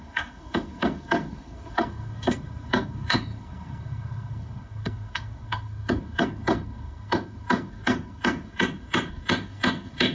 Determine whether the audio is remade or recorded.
remade